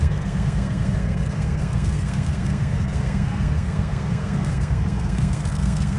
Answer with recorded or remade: remade